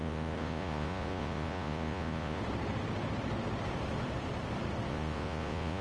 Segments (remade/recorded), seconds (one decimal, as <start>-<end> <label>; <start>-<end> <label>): 0.0-2.4 remade; 2.4-4.9 recorded; 4.9-5.8 remade